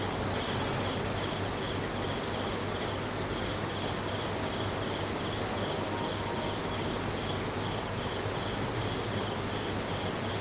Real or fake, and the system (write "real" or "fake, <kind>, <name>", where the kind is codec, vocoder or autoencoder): real